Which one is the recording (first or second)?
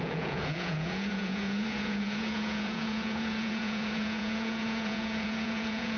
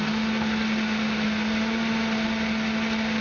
second